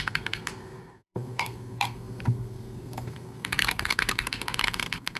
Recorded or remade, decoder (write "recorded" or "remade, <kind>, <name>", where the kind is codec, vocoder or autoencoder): remade, codec, SNAC